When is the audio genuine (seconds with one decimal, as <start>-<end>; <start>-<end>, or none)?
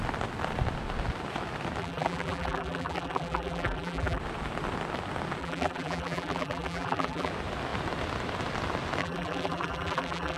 0.0-1.8; 4.2-5.4; 7.3-9.0